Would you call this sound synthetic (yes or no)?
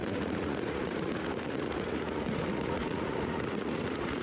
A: yes